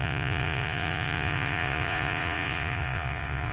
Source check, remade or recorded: remade